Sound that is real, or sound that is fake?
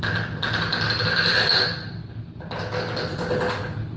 real